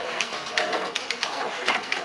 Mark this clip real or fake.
fake